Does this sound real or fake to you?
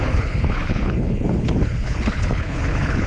fake